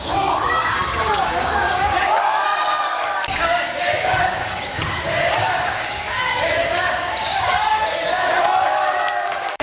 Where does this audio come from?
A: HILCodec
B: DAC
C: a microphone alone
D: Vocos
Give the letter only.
B